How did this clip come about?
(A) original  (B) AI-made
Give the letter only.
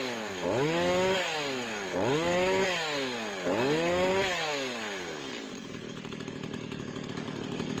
B